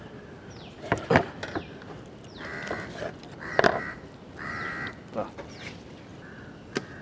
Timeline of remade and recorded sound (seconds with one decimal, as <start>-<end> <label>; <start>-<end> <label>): 0.0-0.9 recorded; 0.9-4.7 remade; 4.7-6.1 recorded; 6.1-7.0 remade